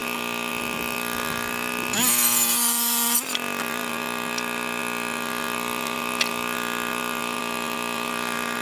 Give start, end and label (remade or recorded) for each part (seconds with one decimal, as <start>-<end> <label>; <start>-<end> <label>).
0.0-8.6 recorded